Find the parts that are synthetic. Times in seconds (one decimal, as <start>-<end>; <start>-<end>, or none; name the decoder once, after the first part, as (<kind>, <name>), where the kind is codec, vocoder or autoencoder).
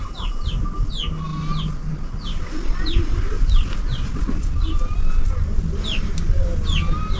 none